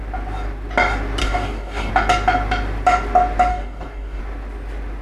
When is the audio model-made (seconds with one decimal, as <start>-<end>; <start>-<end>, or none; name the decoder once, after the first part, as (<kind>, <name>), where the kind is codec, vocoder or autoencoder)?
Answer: 1.2-1.9 (codec, DAC); 3.5-4.2

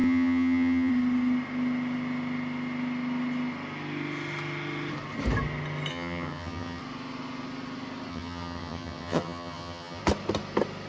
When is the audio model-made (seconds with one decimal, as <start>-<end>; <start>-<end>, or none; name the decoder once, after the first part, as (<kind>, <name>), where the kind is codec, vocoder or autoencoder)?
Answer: 0.0-0.9 (vocoder, HiFi-GAN); 5.9-6.8; 8.1-10.0

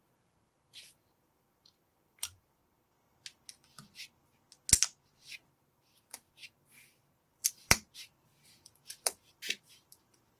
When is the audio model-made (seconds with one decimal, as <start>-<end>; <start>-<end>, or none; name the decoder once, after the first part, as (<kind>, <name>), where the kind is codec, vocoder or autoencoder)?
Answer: 0.0-2.6 (vocoder, BigVGAN v2); 5.1-10.4

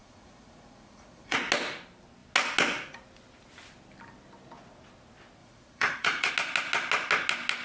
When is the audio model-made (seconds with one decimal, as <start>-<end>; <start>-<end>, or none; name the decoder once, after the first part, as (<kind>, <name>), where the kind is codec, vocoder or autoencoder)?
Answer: 0.0-1.4 (vocoder, Vocos); 5.4-6.3